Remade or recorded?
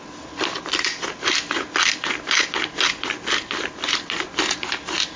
recorded